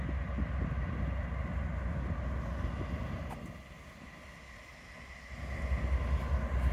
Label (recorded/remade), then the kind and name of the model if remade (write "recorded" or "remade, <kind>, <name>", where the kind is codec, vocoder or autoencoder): recorded